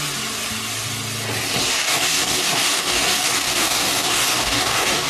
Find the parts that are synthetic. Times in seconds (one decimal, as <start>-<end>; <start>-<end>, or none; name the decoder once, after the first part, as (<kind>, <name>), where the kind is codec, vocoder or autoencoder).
1.7-5.1 (codec, DAC)